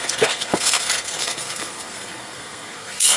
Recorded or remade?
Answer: remade